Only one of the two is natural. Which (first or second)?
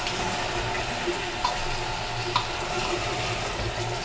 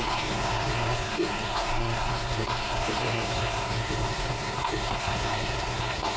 first